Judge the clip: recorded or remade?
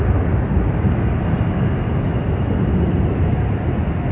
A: recorded